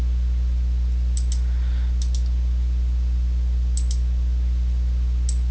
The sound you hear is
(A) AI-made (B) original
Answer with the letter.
B